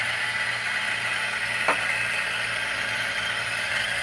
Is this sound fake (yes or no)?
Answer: no